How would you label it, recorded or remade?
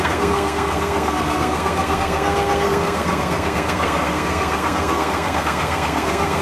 remade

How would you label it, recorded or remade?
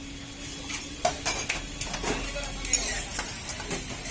recorded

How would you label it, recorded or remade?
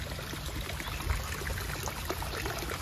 recorded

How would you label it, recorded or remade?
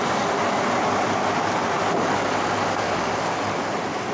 recorded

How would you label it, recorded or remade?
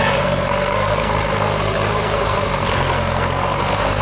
remade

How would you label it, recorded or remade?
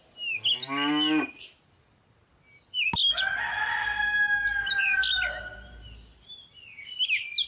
recorded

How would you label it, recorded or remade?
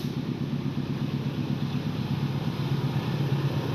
recorded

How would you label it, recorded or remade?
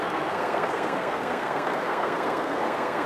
remade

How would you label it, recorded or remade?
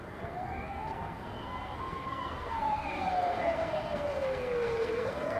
remade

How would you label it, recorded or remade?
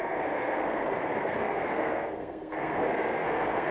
remade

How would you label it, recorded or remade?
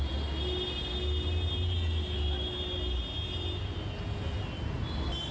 recorded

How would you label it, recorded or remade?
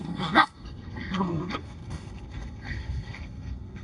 remade